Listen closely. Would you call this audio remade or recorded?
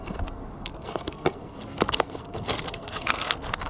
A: remade